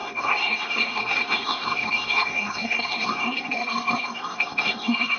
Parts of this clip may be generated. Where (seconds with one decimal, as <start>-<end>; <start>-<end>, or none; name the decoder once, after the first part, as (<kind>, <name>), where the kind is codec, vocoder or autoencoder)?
0.0-5.2 (codec, SNAC)